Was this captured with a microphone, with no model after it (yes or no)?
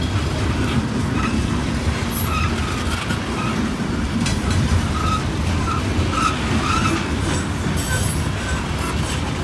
yes